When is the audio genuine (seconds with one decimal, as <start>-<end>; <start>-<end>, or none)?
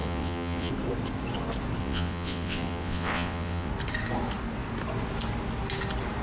0.7-1.8; 3.7-6.2